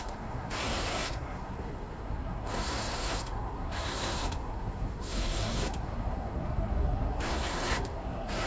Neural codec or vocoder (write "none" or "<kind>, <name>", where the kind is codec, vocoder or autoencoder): codec, SNAC